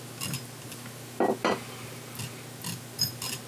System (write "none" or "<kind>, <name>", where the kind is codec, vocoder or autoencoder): none